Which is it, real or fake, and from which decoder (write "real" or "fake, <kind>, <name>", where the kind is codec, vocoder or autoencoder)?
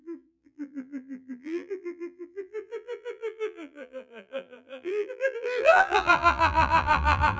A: fake, vocoder, BigVGAN v2